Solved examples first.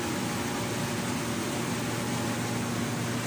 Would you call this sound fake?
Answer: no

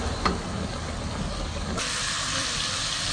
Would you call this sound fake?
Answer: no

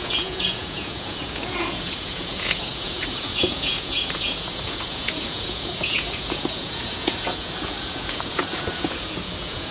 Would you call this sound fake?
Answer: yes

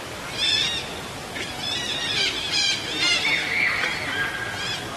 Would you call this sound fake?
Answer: no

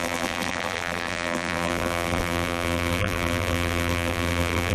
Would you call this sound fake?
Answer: yes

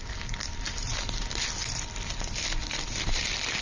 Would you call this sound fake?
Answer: yes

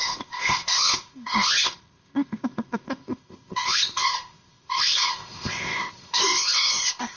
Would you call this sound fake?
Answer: yes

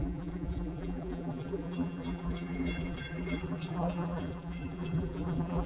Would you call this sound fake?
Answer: yes